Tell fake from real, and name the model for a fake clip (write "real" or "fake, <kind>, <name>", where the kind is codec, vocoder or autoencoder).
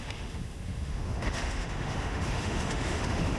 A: fake, autoencoder, DAC-VAE